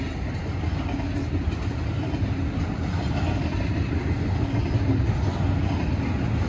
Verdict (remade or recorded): recorded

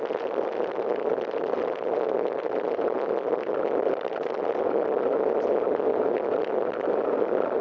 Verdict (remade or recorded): recorded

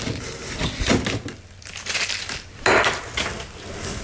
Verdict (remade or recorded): recorded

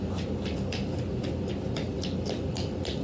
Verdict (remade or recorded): recorded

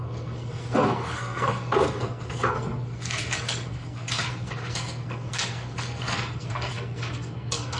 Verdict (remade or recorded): remade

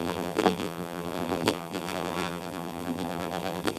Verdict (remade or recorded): remade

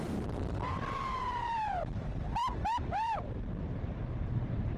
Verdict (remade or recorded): remade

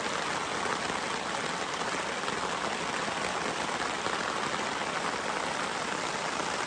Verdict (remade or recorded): recorded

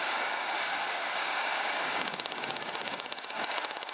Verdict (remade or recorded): remade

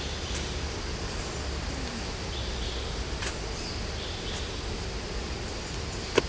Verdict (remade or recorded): recorded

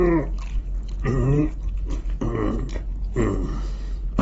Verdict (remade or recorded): recorded